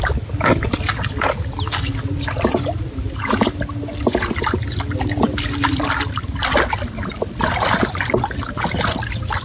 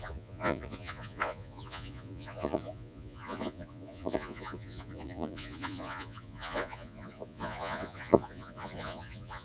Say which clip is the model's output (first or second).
second